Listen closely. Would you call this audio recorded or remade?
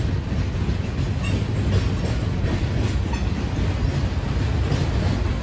recorded